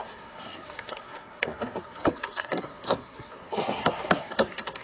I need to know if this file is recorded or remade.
remade